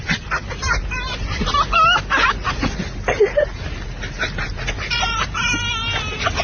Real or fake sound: real